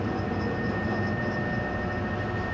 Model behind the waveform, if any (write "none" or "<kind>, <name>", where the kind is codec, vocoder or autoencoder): none